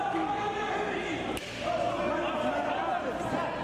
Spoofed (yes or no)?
no